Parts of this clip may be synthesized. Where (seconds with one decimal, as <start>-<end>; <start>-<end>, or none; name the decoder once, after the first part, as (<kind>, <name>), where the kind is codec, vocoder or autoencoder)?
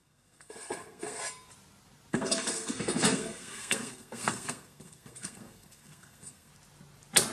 0.0-1.2 (codec, SNAC); 2.1-6.5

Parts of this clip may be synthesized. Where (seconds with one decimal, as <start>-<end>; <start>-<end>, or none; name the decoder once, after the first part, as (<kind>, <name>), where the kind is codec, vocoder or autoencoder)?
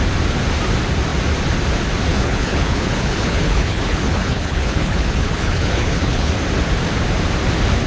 2.1-6.3 (codec, HILCodec)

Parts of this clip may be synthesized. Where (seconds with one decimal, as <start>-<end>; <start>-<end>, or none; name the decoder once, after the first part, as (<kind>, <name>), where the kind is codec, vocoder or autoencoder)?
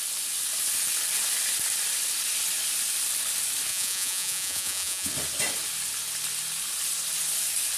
3.7-5.1 (vocoder, Vocos)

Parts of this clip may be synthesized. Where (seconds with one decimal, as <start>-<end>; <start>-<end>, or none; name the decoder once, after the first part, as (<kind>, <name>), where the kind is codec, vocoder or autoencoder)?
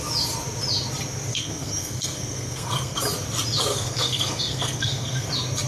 1.3-3.0 (codec, SNAC); 3.7-5.3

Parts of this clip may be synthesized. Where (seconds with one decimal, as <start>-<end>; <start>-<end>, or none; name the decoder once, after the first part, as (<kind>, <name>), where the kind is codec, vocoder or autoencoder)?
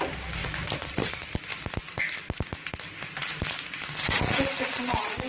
0.0-1.5 (vocoder, BigVGAN v2); 4.7-5.3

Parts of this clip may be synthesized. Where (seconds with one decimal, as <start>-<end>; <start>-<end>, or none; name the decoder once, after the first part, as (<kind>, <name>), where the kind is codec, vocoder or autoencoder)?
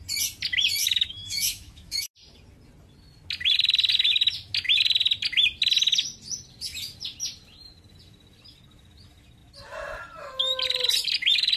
0.8-2.1 (autoencoder, DAC-VAE)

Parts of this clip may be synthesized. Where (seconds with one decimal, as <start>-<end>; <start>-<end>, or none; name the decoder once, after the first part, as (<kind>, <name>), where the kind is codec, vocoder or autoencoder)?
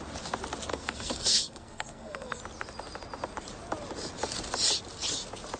0.7-2.4 (codec, SNAC)